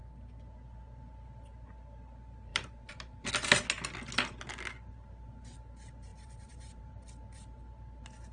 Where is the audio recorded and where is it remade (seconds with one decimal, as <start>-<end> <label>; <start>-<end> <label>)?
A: 0.0-2.5 recorded; 2.5-3.3 remade; 3.3-6.1 recorded; 6.1-6.9 remade; 6.9-8.3 recorded